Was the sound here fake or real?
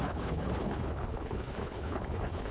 fake